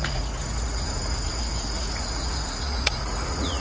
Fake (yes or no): yes